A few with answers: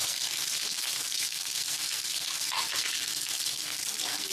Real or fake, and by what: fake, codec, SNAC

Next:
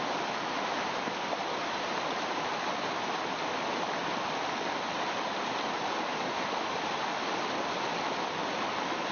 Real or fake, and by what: real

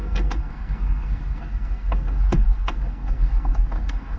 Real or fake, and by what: fake, codec, SNAC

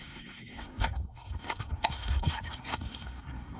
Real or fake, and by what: fake, codec, SNAC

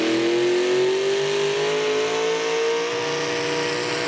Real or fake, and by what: real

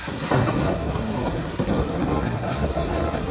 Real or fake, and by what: fake, codec, SNAC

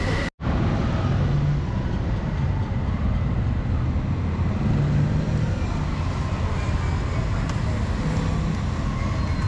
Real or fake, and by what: real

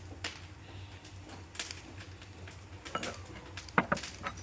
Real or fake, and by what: real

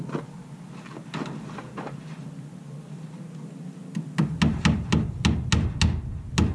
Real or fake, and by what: real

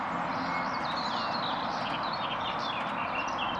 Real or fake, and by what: real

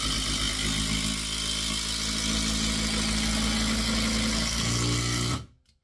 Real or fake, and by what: real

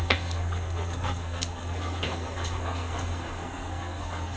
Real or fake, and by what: fake, codec, SNAC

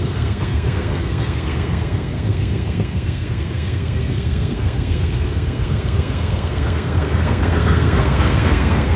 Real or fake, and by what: fake, codec, SNAC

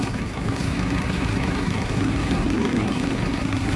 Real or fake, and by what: fake, codec, SNAC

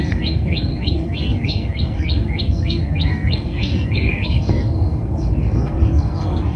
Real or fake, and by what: fake, codec, SNAC